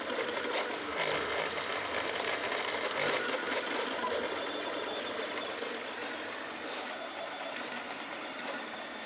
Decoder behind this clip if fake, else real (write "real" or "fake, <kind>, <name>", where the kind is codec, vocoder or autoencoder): real